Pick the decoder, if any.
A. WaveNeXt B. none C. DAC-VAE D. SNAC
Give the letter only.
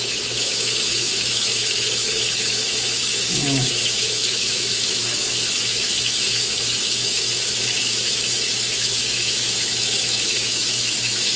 C